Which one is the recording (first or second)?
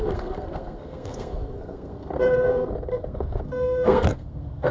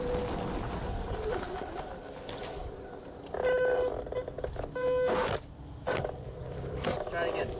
second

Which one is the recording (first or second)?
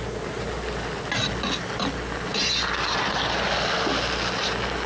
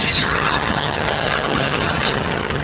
first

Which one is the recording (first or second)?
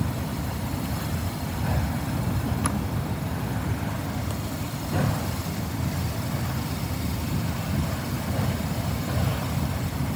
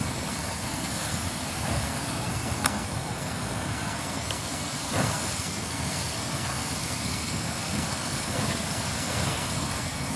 first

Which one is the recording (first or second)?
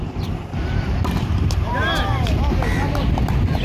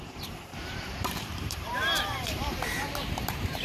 first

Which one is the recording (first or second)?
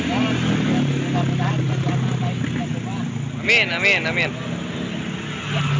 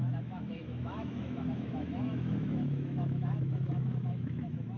first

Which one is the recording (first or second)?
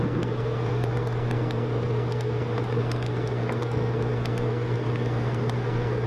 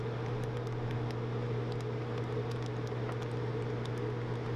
second